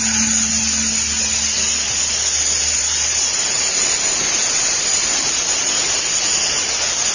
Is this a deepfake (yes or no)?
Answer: no